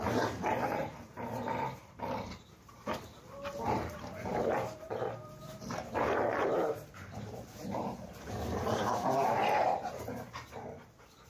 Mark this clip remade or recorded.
remade